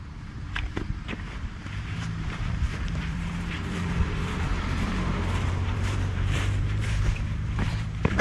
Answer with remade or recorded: remade